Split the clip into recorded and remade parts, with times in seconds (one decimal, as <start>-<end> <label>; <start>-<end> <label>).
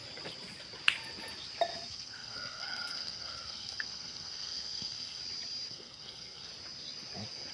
0.0-1.9 recorded; 1.9-5.2 remade; 5.2-5.7 recorded; 5.7-6.5 remade; 6.5-7.5 recorded